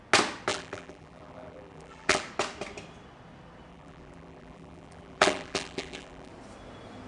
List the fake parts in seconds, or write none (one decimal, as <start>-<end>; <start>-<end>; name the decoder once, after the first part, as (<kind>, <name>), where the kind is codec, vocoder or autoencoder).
0.5-2.2 (vocoder, BigVGAN v2); 3.7-6.3